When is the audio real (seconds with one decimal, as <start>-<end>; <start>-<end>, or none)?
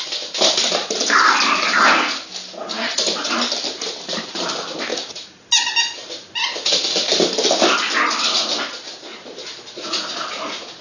0.0-4.9; 5.4-9.1